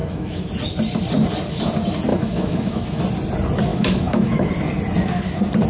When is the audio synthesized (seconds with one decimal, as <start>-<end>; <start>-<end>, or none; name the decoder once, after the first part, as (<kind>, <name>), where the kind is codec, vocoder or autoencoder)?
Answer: 0.0-0.5 (autoencoder, DAC-VAE); 2.1-3.0; 3.7-4.5